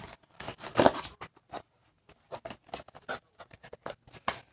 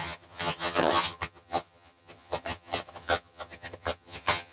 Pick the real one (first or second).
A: first